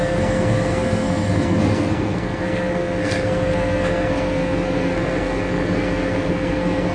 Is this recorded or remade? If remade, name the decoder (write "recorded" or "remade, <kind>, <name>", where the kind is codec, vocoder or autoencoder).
remade, codec, SNAC